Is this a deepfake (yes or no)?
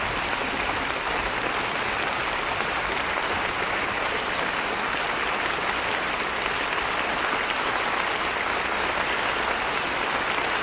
no